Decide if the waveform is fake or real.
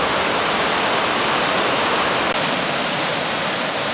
real